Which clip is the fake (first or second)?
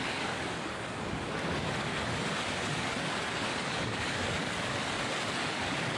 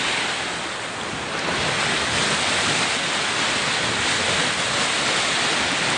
first